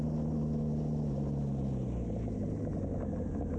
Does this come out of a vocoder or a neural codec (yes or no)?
no